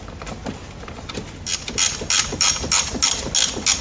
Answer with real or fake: real